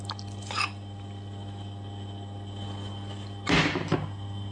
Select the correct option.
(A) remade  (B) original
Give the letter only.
B